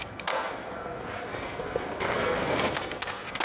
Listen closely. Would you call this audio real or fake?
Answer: fake